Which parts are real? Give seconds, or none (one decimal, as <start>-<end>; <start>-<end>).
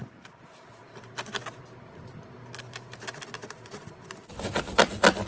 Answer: 0.0-5.3